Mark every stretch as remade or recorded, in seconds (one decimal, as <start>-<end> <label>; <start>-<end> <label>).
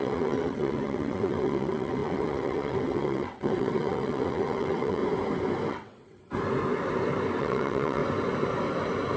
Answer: 0.0-5.0 remade; 5.0-5.7 recorded; 5.7-6.2 remade; 6.2-7.4 recorded; 7.4-8.0 remade; 8.0-9.2 recorded